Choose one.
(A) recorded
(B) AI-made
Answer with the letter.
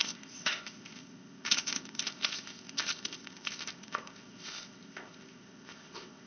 B